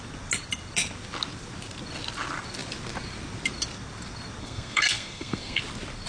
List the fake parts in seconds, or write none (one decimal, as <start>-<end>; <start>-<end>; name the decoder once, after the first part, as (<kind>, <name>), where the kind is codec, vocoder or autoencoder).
4.4-5.6 (codec, SNAC)